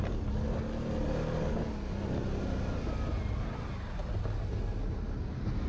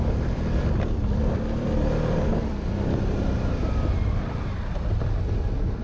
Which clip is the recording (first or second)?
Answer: first